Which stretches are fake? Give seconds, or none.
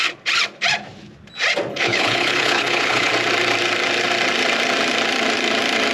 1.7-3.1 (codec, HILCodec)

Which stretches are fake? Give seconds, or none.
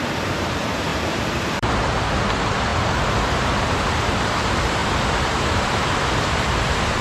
0.0-2.7 (vocoder, BigVGAN v2); 3.3-7.0